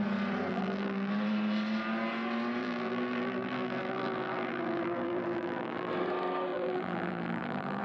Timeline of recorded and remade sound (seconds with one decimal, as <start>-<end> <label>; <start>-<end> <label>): 0.0-0.5 recorded; 0.5-1.1 remade; 1.1-2.6 recorded; 2.6-5.9 remade; 5.9-6.5 recorded; 6.5-7.8 remade